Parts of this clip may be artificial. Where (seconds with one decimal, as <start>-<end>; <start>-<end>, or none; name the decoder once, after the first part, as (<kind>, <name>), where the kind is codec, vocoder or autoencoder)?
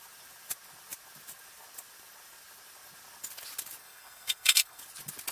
3.8-4.8 (codec, SNAC)